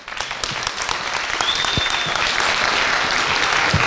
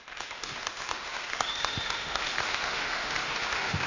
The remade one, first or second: second